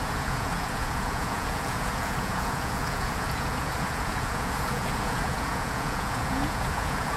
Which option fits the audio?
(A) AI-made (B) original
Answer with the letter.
A